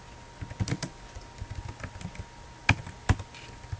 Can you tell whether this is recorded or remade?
recorded